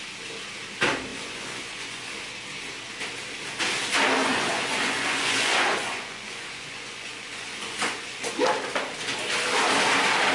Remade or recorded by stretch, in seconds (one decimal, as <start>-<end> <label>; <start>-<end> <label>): 0.0-1.1 recorded; 1.1-2.1 remade; 2.1-4.2 recorded; 4.2-8.3 remade; 8.3-10.3 recorded